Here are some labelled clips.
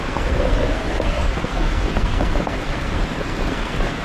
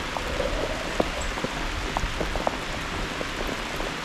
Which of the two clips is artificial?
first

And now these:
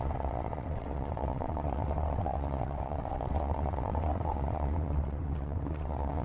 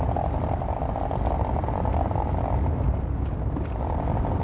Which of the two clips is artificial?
first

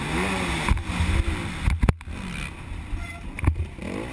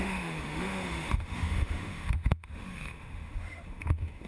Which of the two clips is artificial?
second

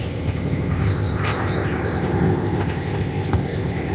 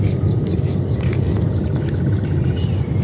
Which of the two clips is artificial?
first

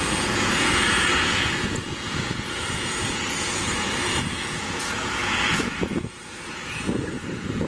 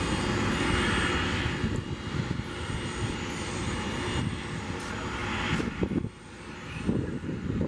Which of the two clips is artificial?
first